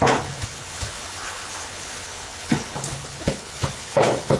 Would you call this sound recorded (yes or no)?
no